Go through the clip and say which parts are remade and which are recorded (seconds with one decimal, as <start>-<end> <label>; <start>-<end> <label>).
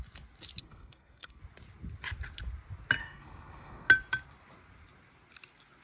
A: 0.0-0.6 recorded; 0.6-1.4 remade; 1.4-3.0 recorded; 3.0-3.9 remade; 3.9-5.8 recorded